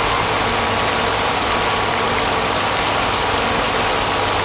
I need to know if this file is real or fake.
real